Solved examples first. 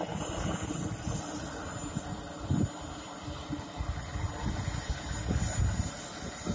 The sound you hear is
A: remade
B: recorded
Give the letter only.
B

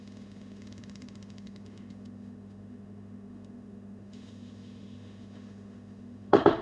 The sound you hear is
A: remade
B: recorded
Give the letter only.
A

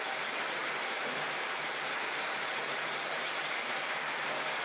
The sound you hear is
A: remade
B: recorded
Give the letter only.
A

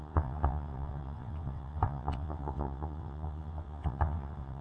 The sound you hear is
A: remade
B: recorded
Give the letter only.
A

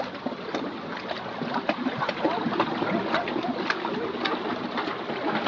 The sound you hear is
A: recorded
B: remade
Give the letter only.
A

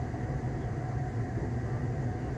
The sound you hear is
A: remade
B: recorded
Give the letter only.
B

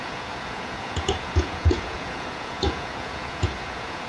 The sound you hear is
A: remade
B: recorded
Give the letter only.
A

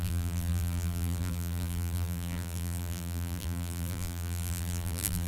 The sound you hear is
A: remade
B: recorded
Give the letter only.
A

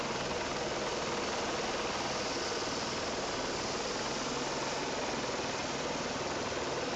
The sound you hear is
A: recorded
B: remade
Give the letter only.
A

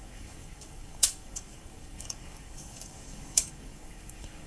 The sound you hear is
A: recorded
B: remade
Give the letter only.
B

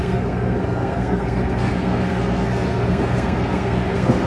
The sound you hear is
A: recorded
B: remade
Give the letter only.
B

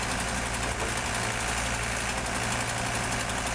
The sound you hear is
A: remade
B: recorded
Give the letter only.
B